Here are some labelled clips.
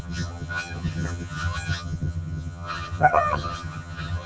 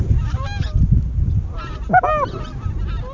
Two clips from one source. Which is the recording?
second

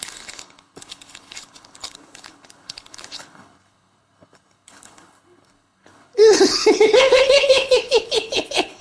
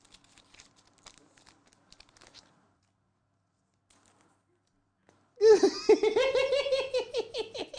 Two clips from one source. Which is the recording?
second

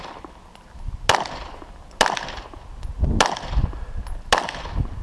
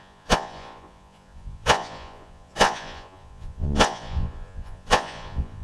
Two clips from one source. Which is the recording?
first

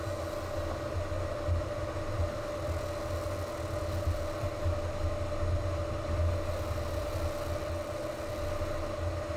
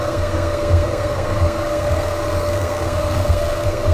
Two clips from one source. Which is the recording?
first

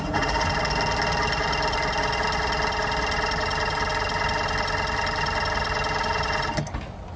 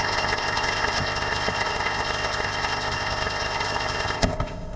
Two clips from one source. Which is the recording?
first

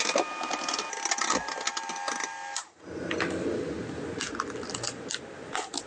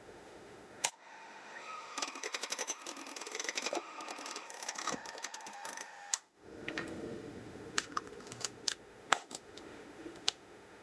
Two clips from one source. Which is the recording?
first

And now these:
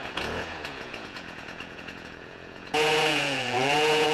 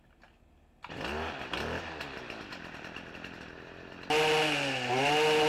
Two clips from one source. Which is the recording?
second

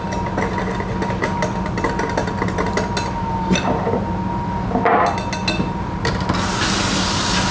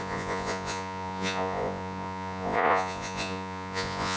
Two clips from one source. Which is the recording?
first